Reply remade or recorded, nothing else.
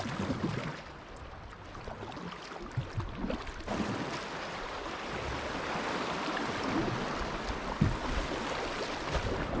recorded